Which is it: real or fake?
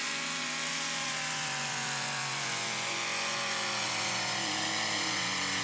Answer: fake